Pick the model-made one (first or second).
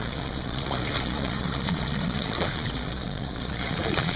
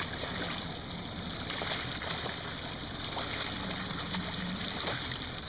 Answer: first